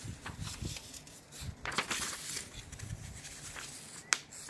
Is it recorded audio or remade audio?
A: recorded